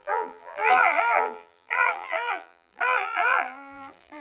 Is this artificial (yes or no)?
yes